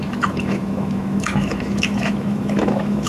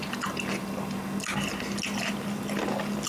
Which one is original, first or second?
second